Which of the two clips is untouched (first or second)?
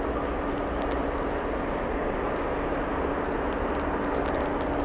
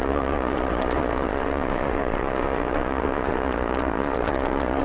first